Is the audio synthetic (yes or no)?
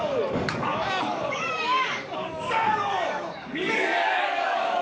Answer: yes